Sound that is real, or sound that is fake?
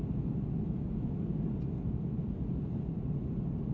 real